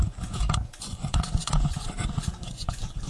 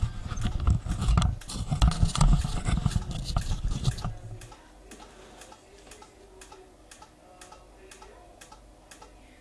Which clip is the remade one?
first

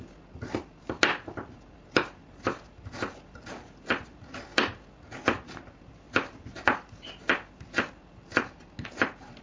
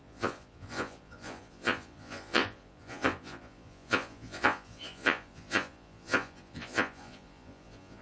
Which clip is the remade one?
second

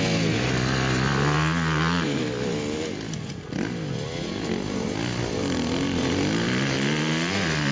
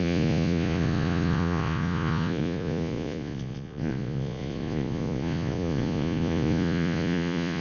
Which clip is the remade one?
second